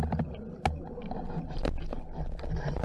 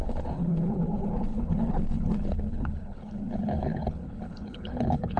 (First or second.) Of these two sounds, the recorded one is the first